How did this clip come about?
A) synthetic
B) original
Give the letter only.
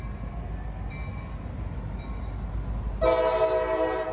B